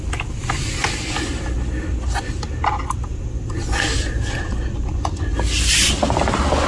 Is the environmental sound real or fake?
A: real